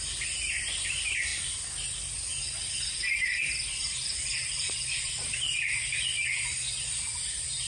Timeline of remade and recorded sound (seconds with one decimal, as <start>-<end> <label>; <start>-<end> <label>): 0.0-1.3 remade; 1.3-1.9 recorded; 1.9-7.7 remade

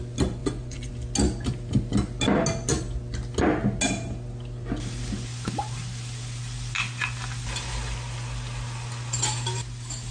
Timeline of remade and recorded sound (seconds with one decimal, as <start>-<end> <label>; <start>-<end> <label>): 0.0-0.4 recorded; 0.4-0.9 remade; 0.9-10.1 recorded

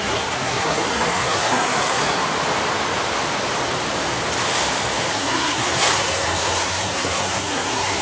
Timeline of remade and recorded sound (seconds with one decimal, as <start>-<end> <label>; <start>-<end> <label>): 0.0-2.2 remade; 2.2-5.1 recorded; 5.1-8.0 remade

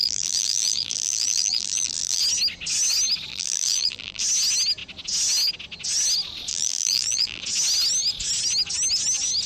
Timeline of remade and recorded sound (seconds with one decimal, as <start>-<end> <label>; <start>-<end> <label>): 0.0-2.2 remade; 2.2-3.3 recorded; 3.3-4.2 remade; 4.2-6.5 recorded; 6.5-7.4 remade; 7.4-9.5 recorded

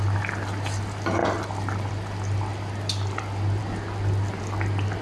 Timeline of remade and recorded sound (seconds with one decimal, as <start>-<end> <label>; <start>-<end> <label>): 0.0-5.0 recorded

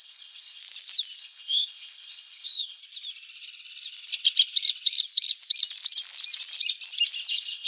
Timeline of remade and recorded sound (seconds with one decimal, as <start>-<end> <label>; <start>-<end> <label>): 0.0-0.6 remade; 0.6-1.2 recorded; 1.2-2.8 remade; 2.8-7.3 recorded; 7.3-7.7 remade

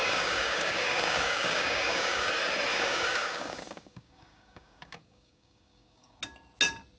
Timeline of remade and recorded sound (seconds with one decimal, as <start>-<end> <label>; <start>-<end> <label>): 0.0-2.3 remade; 2.3-2.7 recorded; 2.7-6.2 remade; 6.2-7.0 recorded

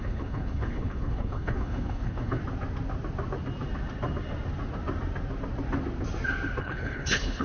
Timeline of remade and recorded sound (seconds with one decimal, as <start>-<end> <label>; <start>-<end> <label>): 0.0-2.4 remade; 2.4-6.6 recorded; 6.6-7.4 remade